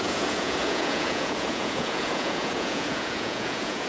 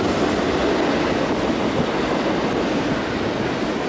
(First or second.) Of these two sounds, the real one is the second